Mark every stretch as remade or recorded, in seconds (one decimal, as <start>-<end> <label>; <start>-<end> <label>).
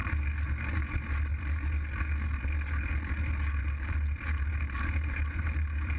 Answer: 0.0-6.0 recorded